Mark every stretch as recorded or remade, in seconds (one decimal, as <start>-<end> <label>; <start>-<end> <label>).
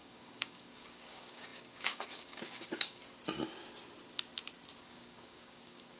0.0-3.0 remade; 3.0-4.8 recorded; 4.8-6.0 remade